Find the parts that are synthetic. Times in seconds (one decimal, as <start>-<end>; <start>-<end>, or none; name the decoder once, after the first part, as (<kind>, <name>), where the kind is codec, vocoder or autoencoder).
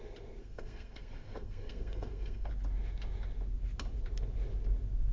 0.4-2.5 (codec, SNAC)